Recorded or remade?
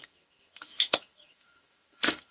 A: remade